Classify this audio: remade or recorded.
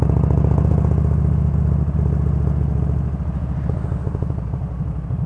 recorded